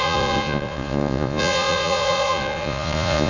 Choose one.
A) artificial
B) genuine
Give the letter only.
A